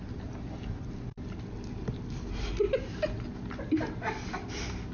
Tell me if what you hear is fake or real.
real